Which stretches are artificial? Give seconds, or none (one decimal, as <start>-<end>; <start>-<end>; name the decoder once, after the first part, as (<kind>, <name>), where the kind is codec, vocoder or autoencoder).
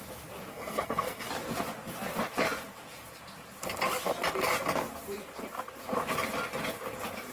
0.5-1.3 (codec, SNAC)